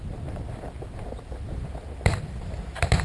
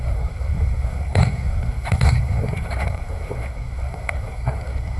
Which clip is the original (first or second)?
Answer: first